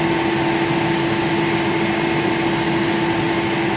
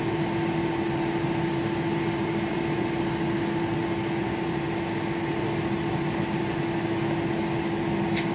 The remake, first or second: second